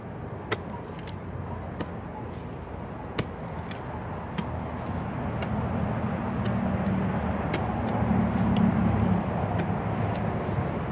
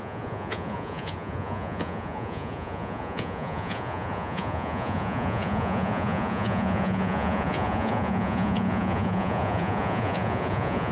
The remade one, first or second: second